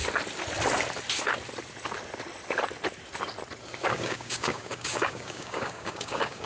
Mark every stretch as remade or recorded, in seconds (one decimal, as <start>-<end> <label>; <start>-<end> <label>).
0.0-3.9 recorded; 3.9-6.5 remade